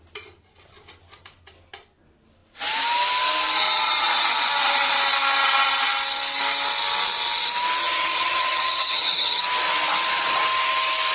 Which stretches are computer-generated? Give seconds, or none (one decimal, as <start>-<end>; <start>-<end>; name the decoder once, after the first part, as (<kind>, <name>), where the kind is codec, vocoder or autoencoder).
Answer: 7.8-9.4 (vocoder, HiFi-GAN)